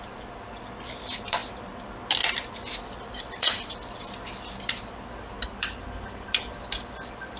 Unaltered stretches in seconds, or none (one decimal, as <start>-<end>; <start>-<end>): 1.4-3.0